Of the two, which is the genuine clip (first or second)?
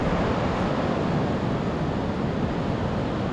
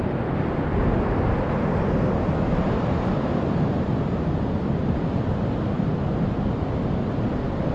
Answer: first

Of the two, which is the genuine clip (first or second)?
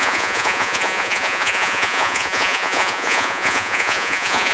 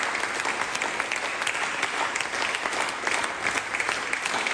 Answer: second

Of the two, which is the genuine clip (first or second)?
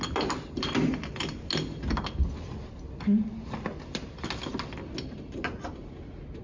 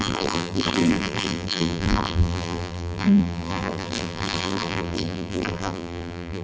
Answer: first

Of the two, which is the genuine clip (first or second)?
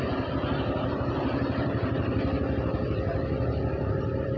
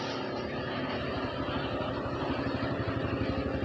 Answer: second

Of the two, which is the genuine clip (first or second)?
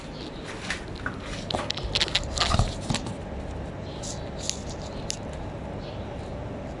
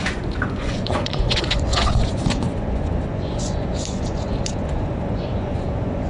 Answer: first